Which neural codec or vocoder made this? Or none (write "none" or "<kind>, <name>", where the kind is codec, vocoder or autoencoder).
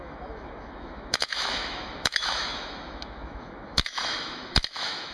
autoencoder, DAC-VAE